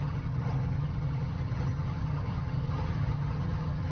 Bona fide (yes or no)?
no